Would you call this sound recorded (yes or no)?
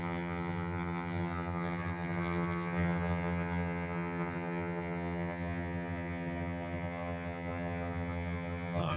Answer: no